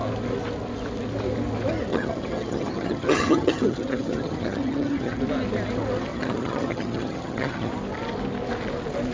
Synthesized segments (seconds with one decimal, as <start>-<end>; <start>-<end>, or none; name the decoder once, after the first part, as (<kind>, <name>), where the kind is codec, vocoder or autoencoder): 1.9-5.2 (vocoder, HiFi-GAN); 6.1-7.7